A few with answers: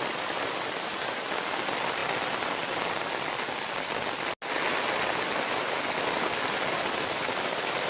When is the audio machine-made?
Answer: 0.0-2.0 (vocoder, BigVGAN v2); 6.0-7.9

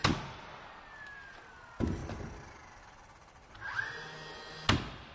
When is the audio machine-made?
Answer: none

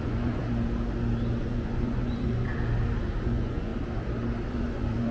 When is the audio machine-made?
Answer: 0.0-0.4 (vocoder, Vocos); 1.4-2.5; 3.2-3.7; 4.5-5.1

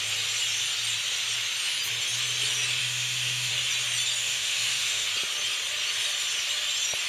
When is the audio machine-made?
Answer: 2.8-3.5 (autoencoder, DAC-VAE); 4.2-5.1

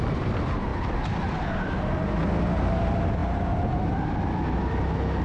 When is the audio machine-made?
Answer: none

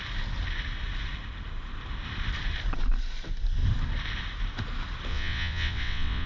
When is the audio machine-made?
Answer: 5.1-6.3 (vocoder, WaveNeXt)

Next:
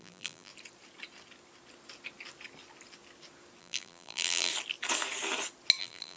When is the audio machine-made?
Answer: 0.0-0.5 (vocoder, BigVGAN v2); 3.6-4.5; 5.8-6.2